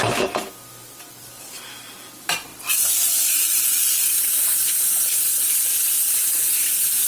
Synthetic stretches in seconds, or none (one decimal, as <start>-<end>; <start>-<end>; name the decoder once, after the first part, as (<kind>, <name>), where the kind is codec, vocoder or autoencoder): 2.5-7.1 (vocoder, BigVGAN v2)